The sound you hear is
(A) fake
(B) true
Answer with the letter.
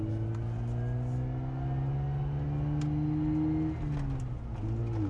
B